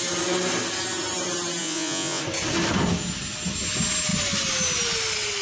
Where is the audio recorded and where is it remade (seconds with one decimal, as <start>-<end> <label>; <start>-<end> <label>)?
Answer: 0.0-1.6 recorded; 1.6-2.2 remade; 2.2-5.4 recorded